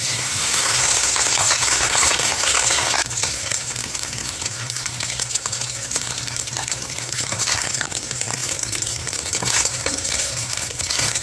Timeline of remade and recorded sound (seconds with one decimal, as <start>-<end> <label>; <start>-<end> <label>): 0.0-11.2 remade